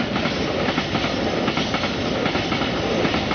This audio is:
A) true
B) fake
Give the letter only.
A